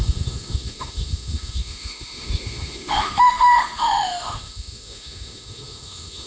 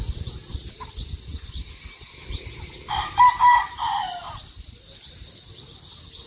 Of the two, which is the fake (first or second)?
first